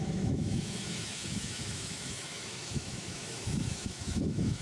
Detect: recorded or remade remade